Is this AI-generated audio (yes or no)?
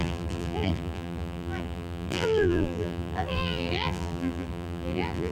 yes